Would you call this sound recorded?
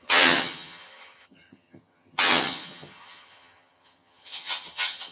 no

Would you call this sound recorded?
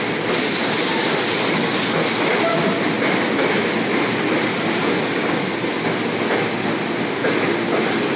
yes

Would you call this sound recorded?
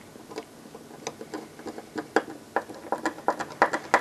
yes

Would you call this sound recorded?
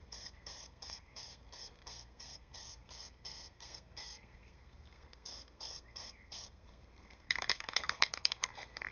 no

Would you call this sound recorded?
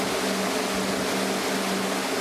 yes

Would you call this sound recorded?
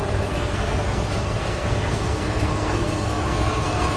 no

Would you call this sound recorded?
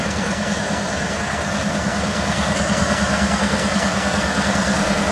no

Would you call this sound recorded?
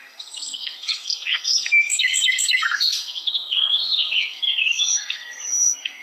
no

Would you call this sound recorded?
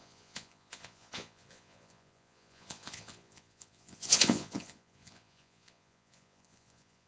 no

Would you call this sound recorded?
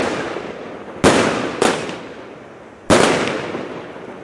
yes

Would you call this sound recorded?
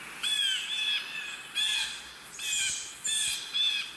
yes